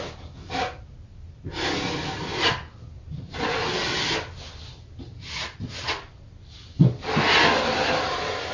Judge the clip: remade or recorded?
recorded